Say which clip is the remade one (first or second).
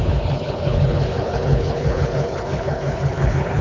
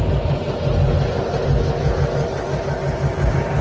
first